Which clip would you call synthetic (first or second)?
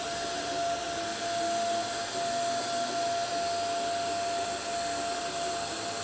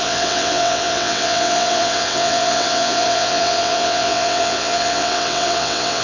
second